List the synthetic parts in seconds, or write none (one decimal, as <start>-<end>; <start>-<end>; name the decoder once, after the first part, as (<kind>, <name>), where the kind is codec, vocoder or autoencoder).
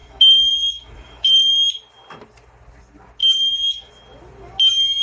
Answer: 0.0-1.5 (autoencoder, DAC-VAE); 3.2-3.9